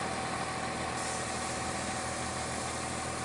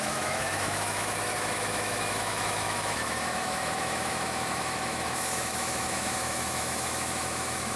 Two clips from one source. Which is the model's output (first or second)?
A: second